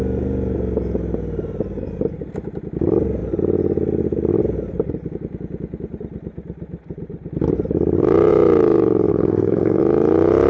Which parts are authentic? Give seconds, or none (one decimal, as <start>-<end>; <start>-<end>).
0.0-9.1; 9.8-10.5